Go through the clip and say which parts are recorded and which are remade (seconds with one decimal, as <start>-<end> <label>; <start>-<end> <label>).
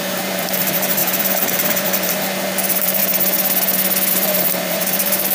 0.0-3.0 remade; 3.0-4.1 recorded; 4.1-5.3 remade